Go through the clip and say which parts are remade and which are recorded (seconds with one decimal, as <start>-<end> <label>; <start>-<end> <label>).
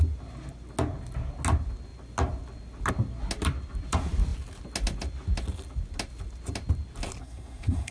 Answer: 0.0-7.2 recorded; 7.2-7.9 remade